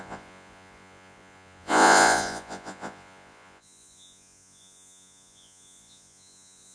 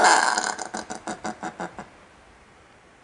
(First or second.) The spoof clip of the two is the first